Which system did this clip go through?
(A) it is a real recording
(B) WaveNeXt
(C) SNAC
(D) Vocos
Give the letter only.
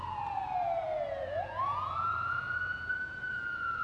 D